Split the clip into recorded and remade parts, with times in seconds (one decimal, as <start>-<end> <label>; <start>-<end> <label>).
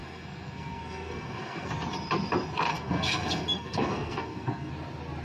0.0-1.7 remade; 1.7-2.7 recorded; 2.7-4.7 remade; 4.7-5.2 recorded